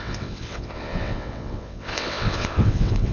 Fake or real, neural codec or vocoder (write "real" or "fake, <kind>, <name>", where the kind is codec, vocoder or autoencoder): fake, vocoder, WaveNeXt